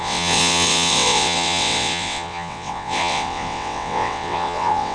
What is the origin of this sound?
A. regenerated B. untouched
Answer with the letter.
A